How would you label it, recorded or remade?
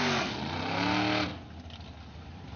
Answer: recorded